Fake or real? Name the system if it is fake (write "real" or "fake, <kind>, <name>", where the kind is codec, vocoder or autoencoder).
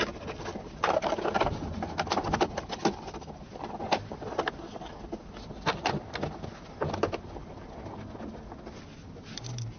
real